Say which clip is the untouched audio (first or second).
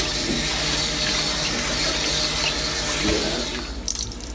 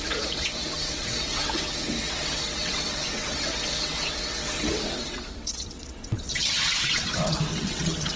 first